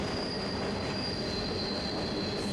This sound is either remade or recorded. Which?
recorded